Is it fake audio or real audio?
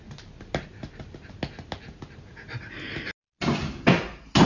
real